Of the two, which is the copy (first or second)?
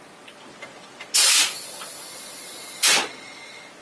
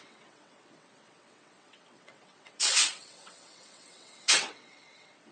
second